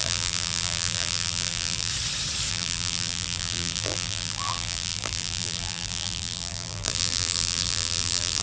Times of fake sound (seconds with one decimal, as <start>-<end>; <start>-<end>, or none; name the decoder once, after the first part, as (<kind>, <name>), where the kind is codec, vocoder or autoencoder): 0.0-1.9 (vocoder, BigVGAN v2); 2.5-8.4